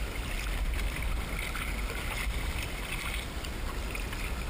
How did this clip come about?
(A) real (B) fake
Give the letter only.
A